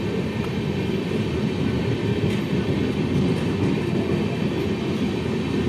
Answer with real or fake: real